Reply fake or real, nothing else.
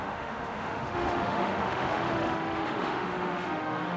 fake